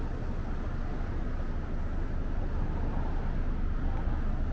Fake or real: real